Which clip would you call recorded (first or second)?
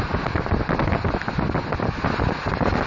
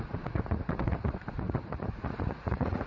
first